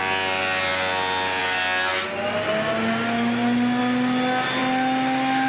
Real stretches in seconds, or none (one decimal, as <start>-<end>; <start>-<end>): 0.0-5.5